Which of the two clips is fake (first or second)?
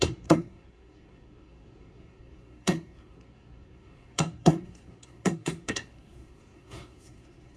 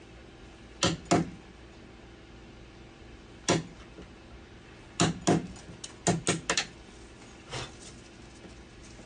first